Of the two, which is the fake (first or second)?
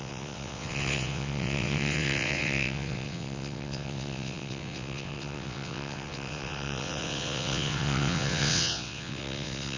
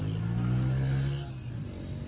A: first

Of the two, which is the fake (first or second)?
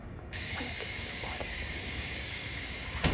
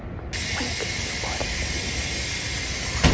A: first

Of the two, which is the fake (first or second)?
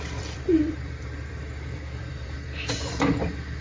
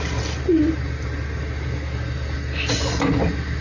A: first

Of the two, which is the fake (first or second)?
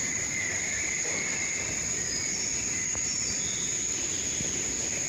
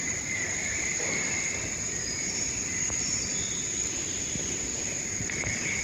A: second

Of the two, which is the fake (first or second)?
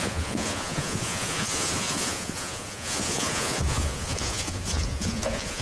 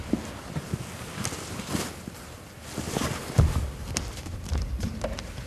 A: first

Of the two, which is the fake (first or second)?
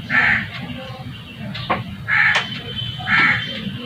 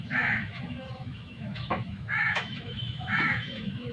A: second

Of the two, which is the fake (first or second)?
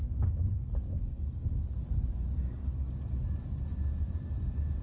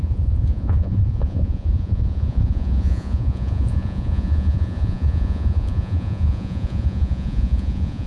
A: second